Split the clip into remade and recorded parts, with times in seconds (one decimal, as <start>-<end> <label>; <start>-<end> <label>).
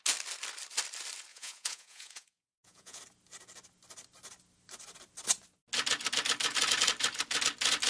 0.0-1.3 recorded; 1.3-3.0 remade; 3.0-7.9 recorded